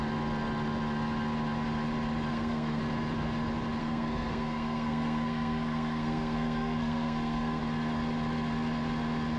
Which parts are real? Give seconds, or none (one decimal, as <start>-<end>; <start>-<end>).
0.0-2.3; 2.8-3.8; 7.6-9.4